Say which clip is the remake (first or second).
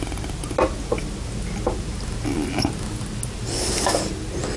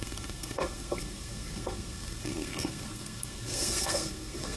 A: second